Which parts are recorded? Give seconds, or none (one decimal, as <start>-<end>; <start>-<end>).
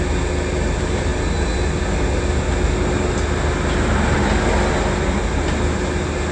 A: 0.0-6.3